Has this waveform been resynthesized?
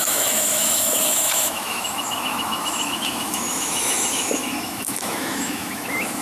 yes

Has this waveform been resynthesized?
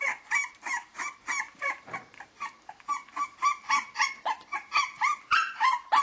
yes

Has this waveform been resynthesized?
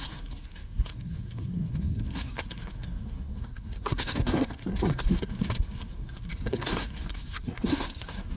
yes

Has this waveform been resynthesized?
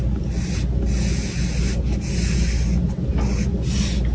no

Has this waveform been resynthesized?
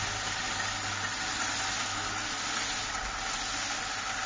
no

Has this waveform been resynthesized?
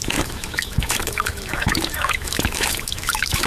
yes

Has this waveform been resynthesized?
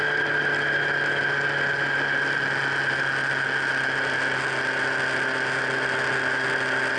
no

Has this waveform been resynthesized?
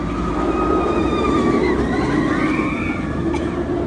no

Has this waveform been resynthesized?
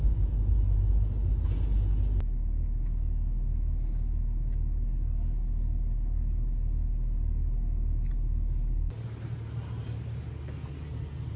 no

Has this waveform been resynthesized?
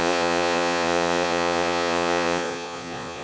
yes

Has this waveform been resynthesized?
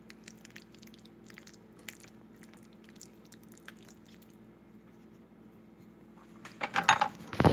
no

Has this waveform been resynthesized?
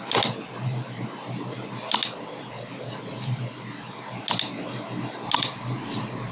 no